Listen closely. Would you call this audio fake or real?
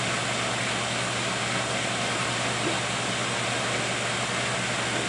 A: real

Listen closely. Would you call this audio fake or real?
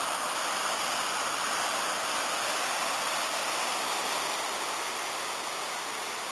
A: real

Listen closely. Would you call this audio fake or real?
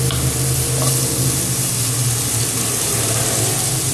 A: real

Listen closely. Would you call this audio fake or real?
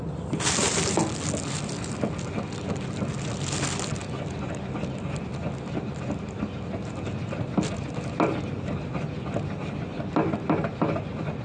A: real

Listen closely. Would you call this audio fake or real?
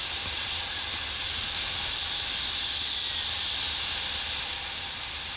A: real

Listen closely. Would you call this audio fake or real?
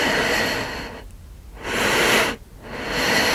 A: real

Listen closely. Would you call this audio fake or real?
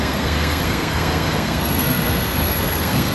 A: fake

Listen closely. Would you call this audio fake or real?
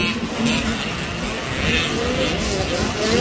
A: real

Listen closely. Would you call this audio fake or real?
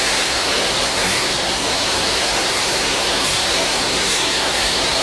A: fake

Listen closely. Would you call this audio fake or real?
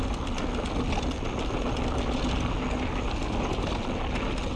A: real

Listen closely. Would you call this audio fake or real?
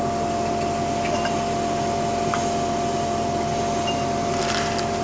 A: real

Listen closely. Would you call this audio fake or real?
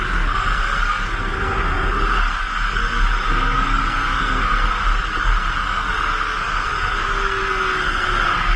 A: fake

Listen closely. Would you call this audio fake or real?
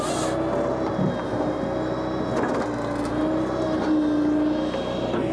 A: real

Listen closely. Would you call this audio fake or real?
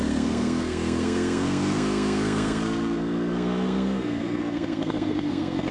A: fake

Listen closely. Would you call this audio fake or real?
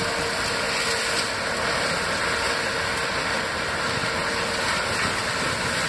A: real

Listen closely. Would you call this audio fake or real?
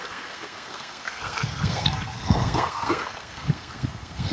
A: fake